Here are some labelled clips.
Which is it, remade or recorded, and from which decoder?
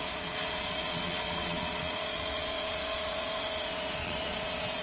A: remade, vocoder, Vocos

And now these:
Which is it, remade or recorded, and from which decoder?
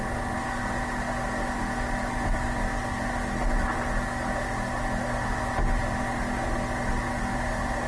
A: recorded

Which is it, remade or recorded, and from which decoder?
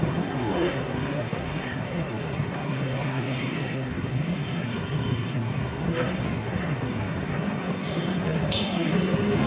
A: remade, codec, SNAC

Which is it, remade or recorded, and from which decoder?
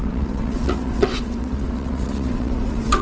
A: remade, vocoder, WaveNeXt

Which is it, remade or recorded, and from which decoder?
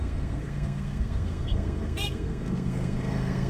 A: remade, codec, SNAC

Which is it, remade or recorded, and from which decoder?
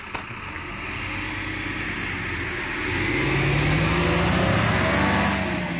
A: recorded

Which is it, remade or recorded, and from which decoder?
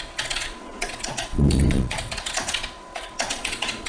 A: remade, vocoder, Vocos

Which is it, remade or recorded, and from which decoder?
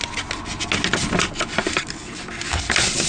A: recorded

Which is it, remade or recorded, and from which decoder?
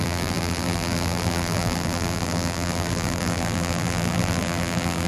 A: remade, vocoder, BigVGAN v2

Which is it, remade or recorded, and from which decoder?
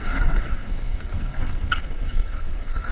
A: remade, codec, SNAC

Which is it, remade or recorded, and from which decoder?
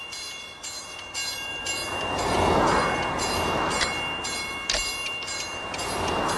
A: recorded